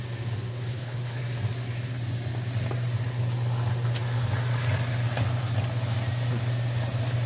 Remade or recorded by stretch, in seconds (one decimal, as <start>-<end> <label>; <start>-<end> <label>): 0.0-0.5 recorded; 0.5-1.2 remade; 1.2-7.3 recorded